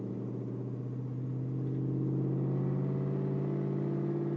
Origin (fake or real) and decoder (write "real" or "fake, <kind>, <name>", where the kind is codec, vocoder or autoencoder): real